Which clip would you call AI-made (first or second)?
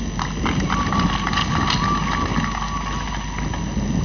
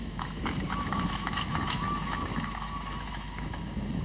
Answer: second